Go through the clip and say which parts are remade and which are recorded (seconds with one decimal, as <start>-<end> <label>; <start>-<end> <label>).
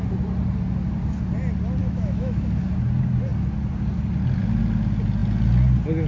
0.0-1.8 recorded; 1.8-2.5 remade; 2.5-6.1 recorded